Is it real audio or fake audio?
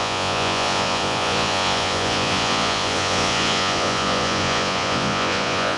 fake